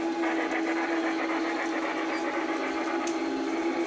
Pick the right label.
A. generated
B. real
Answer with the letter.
B